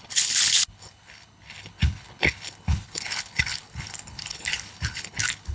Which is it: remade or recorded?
remade